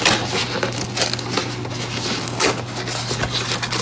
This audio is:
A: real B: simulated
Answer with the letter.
A